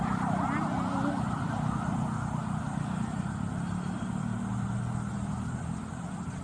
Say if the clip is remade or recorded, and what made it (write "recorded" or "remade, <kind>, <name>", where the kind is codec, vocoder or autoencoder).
recorded